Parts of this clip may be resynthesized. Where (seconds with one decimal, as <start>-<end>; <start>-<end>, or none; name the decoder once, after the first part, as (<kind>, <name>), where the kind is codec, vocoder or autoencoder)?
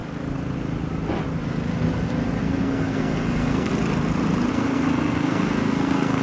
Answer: 2.4-3.7 (codec, SNAC); 4.5-6.2